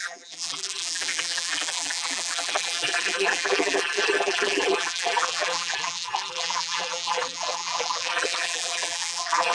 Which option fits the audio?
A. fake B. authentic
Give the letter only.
A